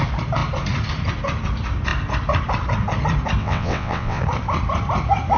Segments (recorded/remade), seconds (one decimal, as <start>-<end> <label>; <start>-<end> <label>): 0.0-3.4 recorded; 3.4-4.2 remade; 4.2-5.4 recorded